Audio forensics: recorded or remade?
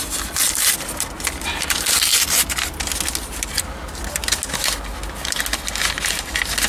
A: recorded